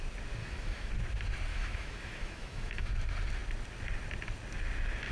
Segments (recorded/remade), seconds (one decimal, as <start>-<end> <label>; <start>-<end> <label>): 0.0-0.4 recorded; 0.4-0.9 remade; 0.9-1.5 recorded; 1.5-2.9 remade; 2.9-5.1 recorded

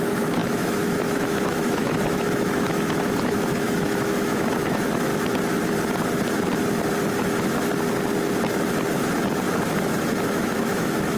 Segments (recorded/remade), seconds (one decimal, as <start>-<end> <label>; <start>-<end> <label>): 0.0-5.1 remade; 5.1-10.3 recorded; 10.3-11.2 remade